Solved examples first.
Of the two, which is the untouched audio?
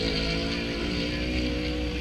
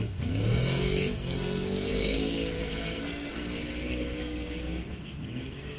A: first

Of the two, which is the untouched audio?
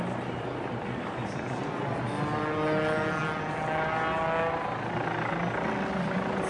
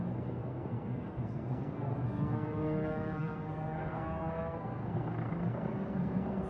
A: first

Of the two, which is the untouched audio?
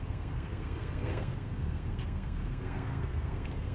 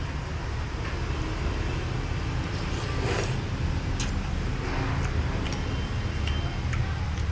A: second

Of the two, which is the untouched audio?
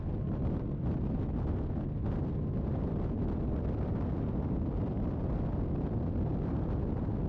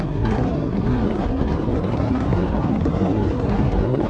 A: first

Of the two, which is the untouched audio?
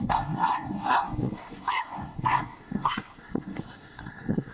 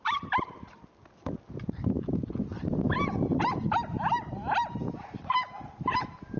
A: second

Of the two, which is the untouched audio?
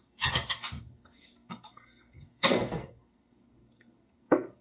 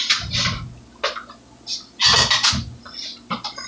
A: second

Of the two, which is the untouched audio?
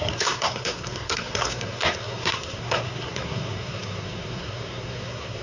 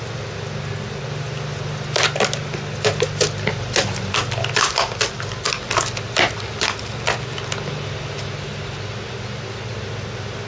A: second